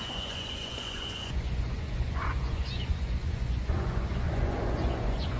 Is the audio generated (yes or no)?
yes